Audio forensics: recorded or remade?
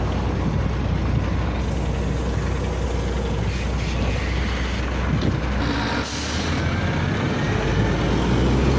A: recorded